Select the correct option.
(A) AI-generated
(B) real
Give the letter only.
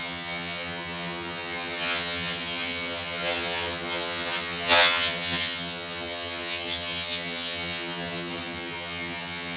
A